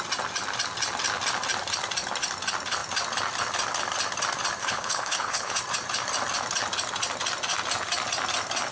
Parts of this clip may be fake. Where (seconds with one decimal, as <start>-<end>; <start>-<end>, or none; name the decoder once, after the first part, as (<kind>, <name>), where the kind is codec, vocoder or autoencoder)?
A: 4.6-5.6 (codec, HILCodec)